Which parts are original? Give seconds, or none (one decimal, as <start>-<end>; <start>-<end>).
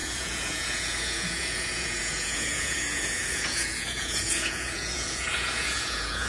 none